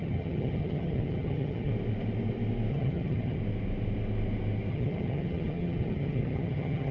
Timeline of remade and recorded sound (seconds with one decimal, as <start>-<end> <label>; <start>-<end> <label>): 0.0-1.7 remade; 1.7-2.7 recorded; 2.7-3.4 remade; 3.4-4.7 recorded; 4.7-6.9 remade